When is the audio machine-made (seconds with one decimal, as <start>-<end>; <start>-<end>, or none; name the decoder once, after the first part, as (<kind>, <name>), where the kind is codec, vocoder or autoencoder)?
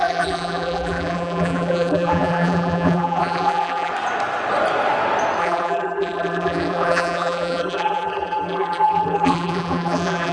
0.0-3.9 (vocoder, BigVGAN v2); 5.4-10.3